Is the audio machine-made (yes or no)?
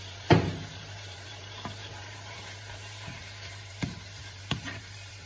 yes